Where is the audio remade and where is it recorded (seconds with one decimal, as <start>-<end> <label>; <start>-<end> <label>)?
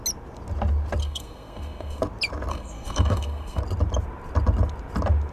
0.0-1.0 recorded; 1.0-2.0 remade; 2.0-2.5 recorded; 2.5-3.6 remade; 3.6-5.3 recorded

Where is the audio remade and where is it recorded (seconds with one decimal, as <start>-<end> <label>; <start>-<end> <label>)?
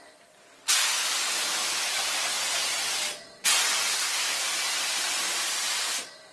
0.0-3.9 recorded; 3.9-4.4 remade; 4.4-6.3 recorded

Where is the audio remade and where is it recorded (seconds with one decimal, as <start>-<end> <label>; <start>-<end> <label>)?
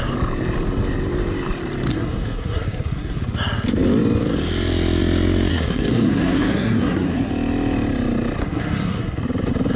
0.0-1.9 recorded; 1.9-3.2 remade; 3.2-5.5 recorded; 5.5-7.3 remade; 7.3-8.4 recorded; 8.4-9.2 remade; 9.2-9.8 recorded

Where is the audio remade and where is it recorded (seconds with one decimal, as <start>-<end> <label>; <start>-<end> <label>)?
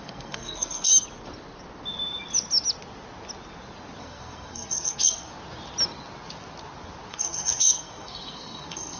0.0-0.9 remade; 0.9-4.0 recorded; 4.0-5.3 remade; 5.3-7.1 recorded; 7.1-9.0 remade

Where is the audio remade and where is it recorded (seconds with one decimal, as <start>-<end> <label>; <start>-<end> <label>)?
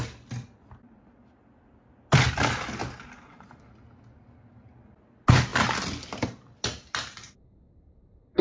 0.0-8.4 recorded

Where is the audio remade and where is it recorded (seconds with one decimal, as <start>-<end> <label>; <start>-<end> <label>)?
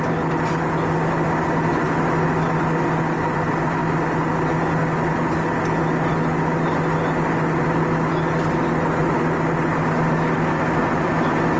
0.0-11.6 recorded